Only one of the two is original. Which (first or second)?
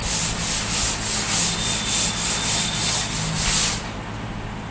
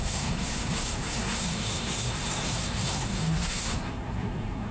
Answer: first